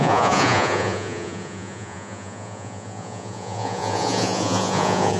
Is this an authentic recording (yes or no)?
no